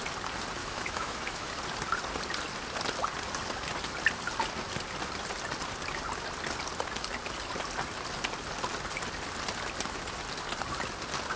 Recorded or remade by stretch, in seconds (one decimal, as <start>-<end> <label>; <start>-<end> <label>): 0.0-0.6 recorded; 0.6-1.5 remade; 1.5-11.4 recorded